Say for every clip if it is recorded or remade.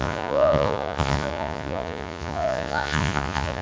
remade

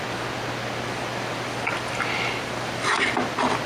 recorded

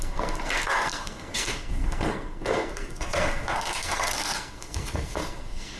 remade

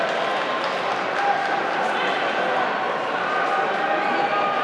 recorded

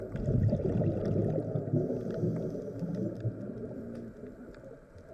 recorded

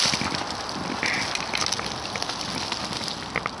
recorded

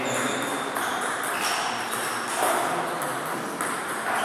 recorded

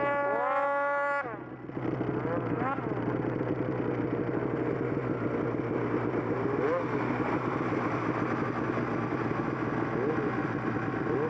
recorded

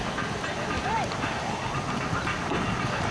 recorded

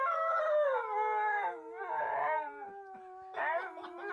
recorded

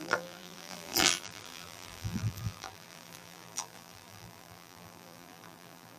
remade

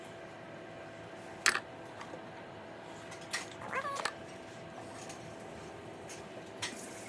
recorded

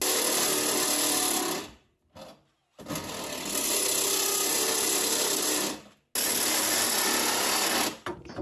recorded